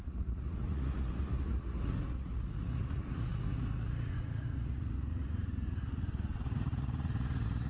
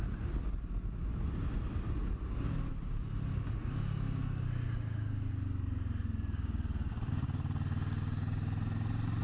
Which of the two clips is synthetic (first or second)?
first